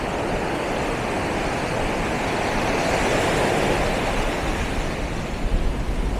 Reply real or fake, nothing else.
real